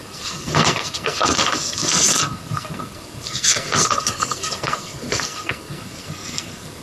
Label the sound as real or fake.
fake